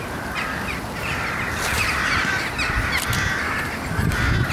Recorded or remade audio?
recorded